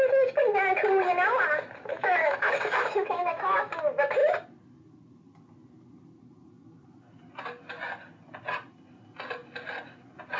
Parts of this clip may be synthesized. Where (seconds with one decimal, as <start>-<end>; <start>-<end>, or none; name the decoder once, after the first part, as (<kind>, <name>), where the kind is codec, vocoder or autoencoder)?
1.9-3.8 (autoencoder, DAC-VAE)